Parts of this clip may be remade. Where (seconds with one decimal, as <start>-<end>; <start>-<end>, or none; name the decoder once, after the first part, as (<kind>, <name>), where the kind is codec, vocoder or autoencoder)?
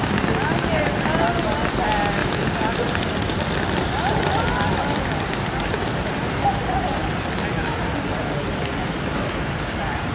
none